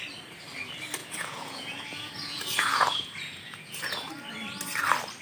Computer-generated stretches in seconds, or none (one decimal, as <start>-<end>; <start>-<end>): 1.0-4.1